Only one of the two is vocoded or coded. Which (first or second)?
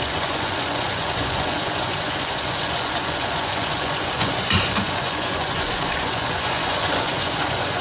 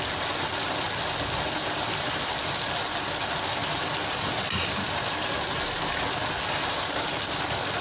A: first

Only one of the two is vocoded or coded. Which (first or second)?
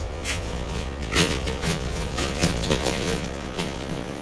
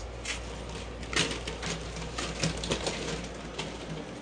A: first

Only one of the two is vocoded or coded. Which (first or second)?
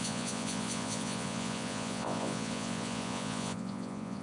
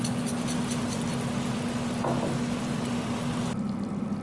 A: first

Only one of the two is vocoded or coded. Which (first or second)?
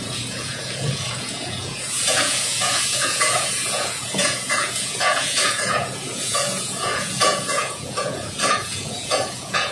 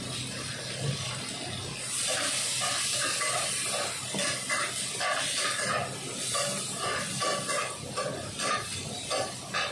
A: first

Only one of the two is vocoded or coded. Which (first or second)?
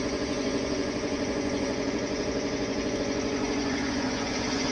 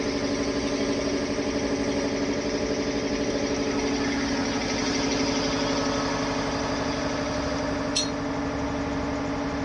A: first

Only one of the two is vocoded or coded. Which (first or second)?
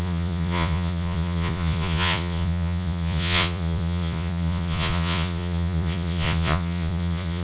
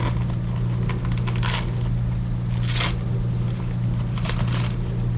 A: first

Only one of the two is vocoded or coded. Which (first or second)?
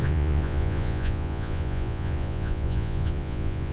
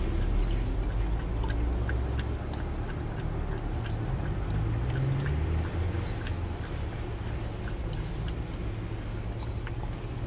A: first